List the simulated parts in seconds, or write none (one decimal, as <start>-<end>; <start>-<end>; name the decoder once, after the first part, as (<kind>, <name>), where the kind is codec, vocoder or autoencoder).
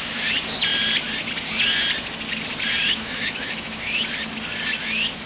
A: 2.9-3.9 (autoencoder, DAC-VAE)